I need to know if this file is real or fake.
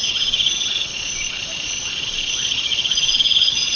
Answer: fake